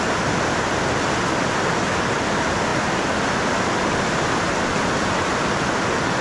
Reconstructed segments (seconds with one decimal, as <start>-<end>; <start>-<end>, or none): none